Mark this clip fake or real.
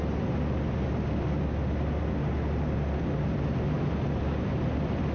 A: real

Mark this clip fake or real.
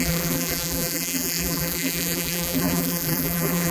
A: fake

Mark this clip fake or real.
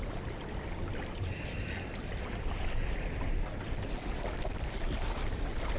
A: real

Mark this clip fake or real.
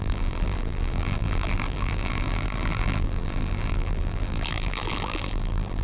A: fake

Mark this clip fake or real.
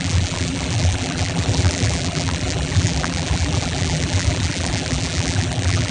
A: fake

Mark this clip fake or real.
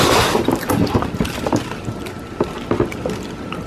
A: real